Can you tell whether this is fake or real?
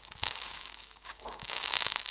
fake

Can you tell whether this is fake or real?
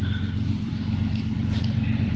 fake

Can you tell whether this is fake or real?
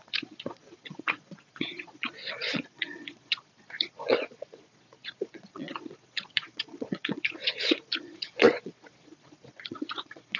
fake